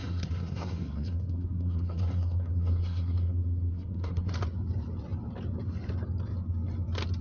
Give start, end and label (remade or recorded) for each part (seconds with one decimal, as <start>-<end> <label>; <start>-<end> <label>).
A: 0.0-4.3 remade; 4.3-7.2 recorded